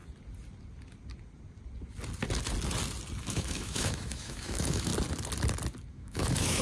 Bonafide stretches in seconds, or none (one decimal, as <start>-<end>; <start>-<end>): 0.0-3.2; 4.9-5.9